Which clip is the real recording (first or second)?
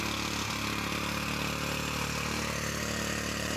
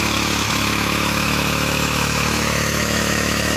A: first